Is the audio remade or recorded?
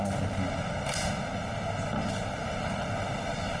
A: recorded